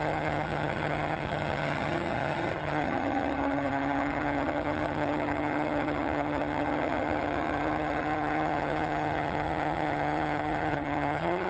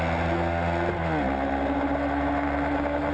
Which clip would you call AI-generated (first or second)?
first